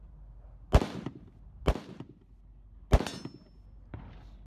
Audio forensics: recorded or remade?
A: recorded